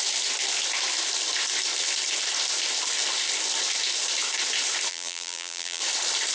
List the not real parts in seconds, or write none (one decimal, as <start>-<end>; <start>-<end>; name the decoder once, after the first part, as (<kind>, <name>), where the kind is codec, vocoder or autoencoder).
4.9-5.8 (vocoder, BigVGAN v2)